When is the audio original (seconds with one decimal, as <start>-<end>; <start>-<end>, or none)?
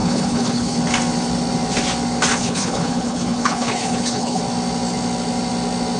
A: 0.8-2.3; 4.4-6.0